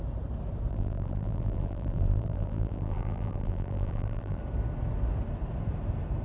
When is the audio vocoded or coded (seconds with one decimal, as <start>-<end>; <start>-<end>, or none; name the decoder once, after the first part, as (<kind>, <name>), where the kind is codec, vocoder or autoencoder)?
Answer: 0.7-4.4 (vocoder, BigVGAN v2)